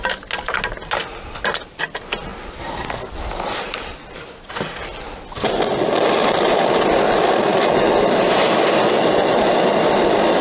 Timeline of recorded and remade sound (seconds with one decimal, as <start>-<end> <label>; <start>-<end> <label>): 0.0-10.4 recorded